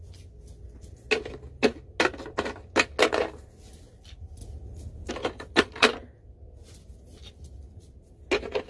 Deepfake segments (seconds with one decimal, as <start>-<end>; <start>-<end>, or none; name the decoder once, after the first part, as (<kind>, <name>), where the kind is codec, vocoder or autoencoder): none